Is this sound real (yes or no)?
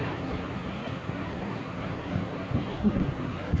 no